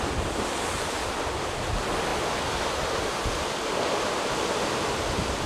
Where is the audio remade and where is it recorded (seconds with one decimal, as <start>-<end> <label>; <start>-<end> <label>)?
0.0-1.0 recorded; 1.0-1.5 remade; 1.5-5.5 recorded